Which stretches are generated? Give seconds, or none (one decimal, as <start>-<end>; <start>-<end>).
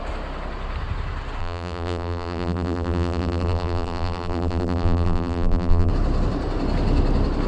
1.4-5.9